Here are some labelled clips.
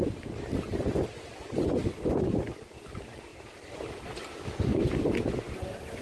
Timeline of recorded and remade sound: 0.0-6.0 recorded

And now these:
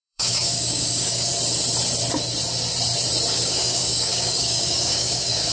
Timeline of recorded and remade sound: 0.0-1.3 remade; 1.3-3.3 recorded; 3.3-5.5 remade

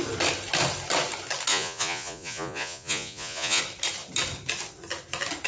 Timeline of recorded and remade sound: 0.0-1.5 recorded; 1.5-3.6 remade; 3.6-5.5 recorded

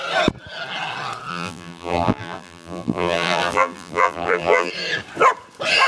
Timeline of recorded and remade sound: 0.0-1.3 recorded; 1.3-4.7 remade; 4.7-5.9 recorded

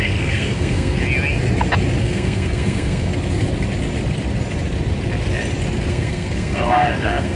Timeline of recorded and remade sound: 0.0-1.0 remade; 1.0-2.0 recorded; 2.0-3.1 remade; 3.1-5.9 recorded; 5.9-7.4 remade

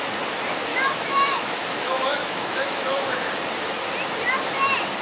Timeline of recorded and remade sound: 0.0-0.7 recorded; 0.7-3.3 remade; 3.3-5.0 recorded